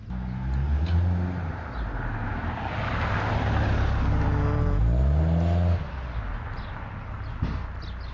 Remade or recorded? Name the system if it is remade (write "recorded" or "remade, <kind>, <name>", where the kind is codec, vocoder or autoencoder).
recorded